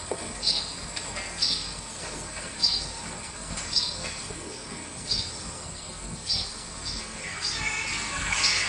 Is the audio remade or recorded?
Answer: remade